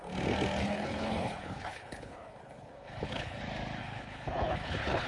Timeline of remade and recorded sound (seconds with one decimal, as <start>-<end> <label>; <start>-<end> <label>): 0.0-0.6 recorded; 0.6-3.4 remade; 3.4-3.8 recorded; 3.8-5.1 remade